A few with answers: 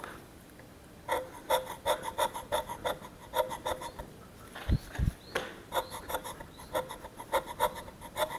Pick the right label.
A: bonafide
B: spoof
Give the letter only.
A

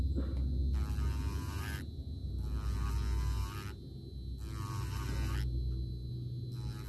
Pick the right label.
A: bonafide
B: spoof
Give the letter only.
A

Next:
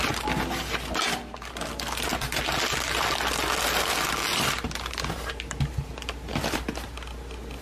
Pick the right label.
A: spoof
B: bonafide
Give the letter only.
B